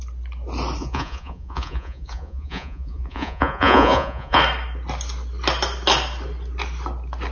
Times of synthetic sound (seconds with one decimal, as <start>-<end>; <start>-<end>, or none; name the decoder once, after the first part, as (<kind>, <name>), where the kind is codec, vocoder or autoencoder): 0.8-4.4 (vocoder, Vocos)